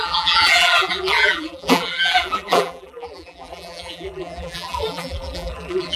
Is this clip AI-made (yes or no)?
yes